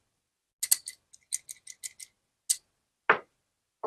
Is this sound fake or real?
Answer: real